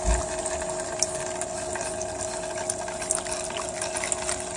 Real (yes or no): yes